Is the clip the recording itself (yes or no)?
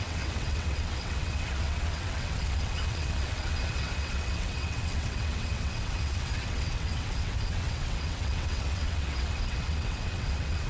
no